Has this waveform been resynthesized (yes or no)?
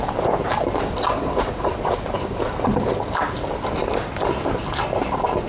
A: no